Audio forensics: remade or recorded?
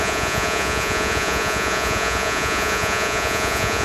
remade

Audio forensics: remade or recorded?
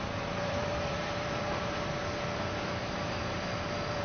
remade